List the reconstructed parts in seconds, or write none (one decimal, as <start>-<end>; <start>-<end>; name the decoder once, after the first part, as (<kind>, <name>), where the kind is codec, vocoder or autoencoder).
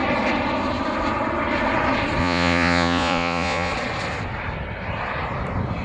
2.2-3.7 (vocoder, Vocos)